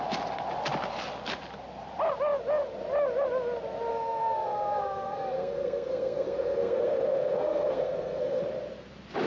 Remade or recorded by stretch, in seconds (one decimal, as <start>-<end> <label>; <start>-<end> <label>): 0.0-3.9 recorded; 3.9-8.4 remade; 8.4-9.3 recorded